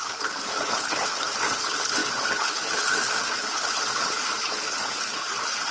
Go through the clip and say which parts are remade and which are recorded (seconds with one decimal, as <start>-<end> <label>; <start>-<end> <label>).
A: 0.0-5.7 remade